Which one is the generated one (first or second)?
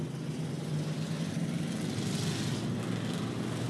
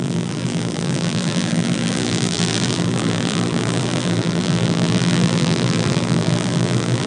second